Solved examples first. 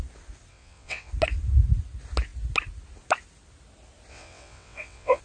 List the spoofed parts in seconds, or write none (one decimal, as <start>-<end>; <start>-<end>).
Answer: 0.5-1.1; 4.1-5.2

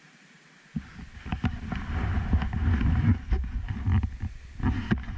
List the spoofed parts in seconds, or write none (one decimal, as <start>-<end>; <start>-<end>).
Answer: none

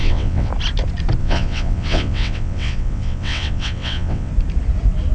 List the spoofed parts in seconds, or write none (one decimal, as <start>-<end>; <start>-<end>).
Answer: 0.0-0.5; 1.2-4.3